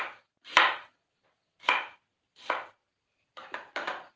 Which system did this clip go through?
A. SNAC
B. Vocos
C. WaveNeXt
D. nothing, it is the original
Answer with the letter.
D